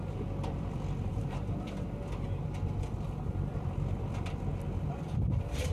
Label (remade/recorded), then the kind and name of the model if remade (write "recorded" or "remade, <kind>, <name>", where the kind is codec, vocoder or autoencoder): remade, vocoder, BigVGAN v2